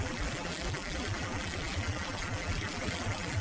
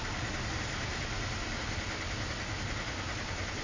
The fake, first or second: first